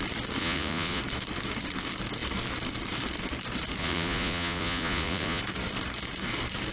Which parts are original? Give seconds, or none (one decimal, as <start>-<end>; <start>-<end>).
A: 0.0-0.4; 1.0-3.8; 5.4-6.7